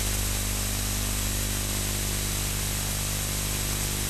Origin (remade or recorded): recorded